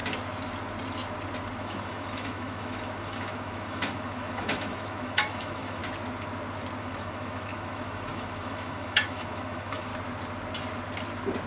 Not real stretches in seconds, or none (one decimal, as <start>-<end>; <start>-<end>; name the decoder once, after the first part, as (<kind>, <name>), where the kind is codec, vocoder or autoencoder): 1.6-5.8 (autoencoder, DAC-VAE); 6.8-9.9